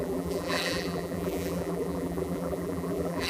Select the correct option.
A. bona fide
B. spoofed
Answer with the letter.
B